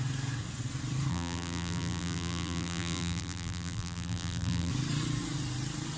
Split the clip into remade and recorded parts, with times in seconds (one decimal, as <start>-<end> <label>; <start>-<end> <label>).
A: 0.0-1.1 recorded; 1.1-4.7 remade; 4.7-6.0 recorded